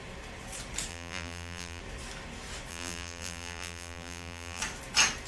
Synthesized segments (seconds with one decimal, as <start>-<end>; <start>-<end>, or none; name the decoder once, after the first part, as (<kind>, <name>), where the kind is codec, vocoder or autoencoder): 0.9-1.8 (vocoder, BigVGAN v2); 2.7-4.6